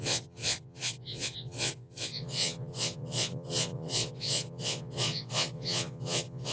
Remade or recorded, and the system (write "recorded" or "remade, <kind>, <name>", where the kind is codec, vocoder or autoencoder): remade, vocoder, Vocos